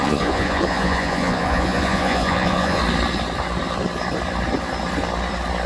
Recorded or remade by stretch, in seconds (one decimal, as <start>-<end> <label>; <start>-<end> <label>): 0.0-2.8 remade; 2.8-5.7 recorded